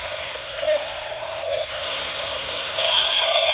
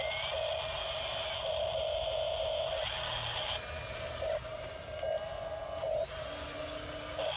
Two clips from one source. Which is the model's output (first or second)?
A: first